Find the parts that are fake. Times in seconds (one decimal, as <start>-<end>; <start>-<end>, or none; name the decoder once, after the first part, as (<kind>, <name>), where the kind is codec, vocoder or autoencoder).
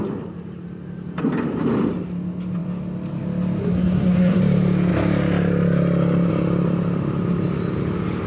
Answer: 3.6-4.4 (codec, SNAC)